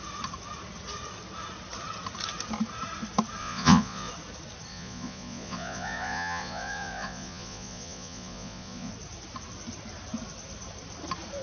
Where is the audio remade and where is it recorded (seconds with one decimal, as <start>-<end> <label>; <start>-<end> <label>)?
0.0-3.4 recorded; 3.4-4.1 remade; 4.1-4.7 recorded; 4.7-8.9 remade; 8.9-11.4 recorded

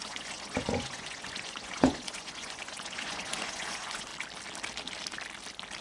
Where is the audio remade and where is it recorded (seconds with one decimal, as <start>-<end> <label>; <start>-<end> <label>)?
0.0-4.1 remade; 4.1-5.8 recorded

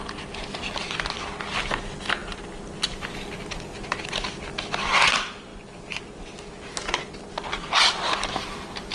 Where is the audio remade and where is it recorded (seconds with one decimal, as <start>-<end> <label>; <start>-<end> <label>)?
0.0-8.9 recorded